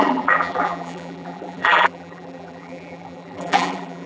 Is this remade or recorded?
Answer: remade